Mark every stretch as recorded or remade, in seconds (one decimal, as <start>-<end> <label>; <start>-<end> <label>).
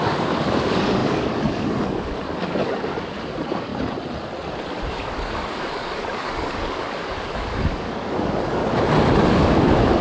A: 0.0-3.7 remade; 3.7-4.9 recorded; 4.9-8.6 remade; 8.6-9.3 recorded; 9.3-10.0 remade